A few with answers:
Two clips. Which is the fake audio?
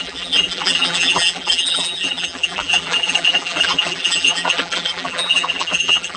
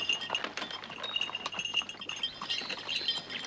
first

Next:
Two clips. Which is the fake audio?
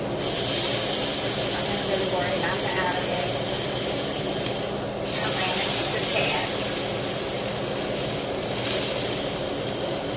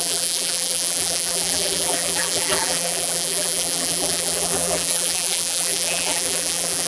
second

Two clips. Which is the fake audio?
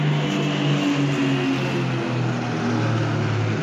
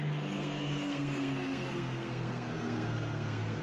second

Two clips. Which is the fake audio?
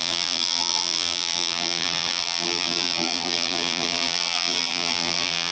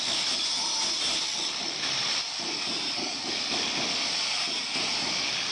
first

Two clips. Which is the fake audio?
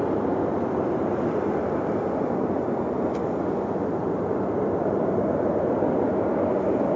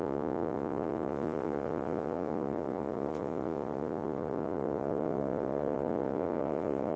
second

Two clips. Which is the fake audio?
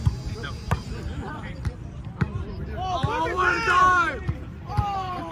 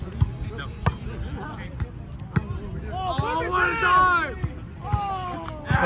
first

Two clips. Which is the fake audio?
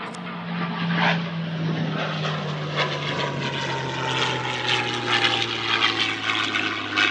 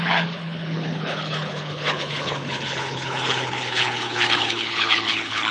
second